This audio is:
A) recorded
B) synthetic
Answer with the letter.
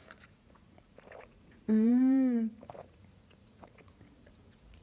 B